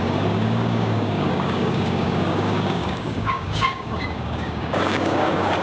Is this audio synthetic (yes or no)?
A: yes